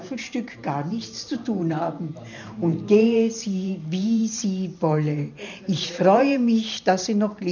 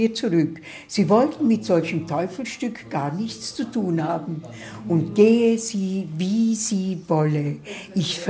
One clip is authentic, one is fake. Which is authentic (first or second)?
second